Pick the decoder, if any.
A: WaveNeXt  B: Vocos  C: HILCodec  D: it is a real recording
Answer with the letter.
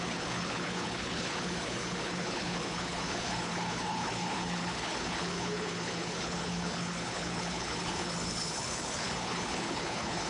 C